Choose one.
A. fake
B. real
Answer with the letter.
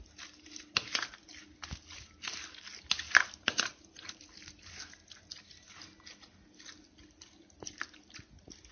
B